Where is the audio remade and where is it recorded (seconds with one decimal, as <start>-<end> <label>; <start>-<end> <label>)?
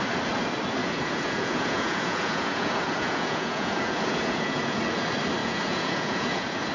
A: 0.0-0.8 recorded; 0.8-4.8 remade; 4.8-5.4 recorded; 5.4-6.7 remade